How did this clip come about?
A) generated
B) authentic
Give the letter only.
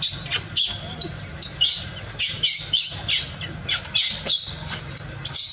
B